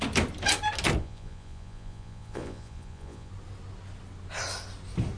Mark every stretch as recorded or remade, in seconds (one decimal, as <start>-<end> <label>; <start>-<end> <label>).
0.0-1.0 recorded; 1.0-3.3 remade; 3.3-5.2 recorded